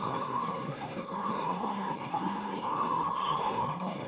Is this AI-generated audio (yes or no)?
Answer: yes